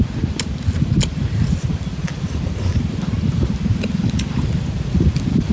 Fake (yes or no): no